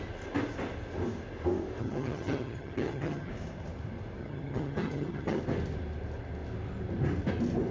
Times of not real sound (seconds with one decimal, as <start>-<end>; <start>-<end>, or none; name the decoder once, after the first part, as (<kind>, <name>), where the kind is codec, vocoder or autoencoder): 1.8-3.3 (vocoder, HiFi-GAN); 4.2-5.4